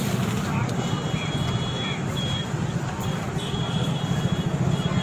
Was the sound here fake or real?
fake